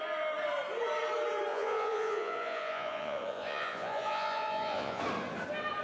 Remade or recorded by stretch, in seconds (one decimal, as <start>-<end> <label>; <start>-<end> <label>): 0.0-1.5 recorded; 1.5-5.0 remade; 5.0-5.8 recorded